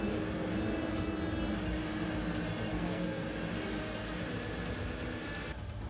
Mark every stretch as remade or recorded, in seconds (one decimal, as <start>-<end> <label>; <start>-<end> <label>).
0.0-2.7 recorded; 2.7-3.3 remade; 3.3-5.9 recorded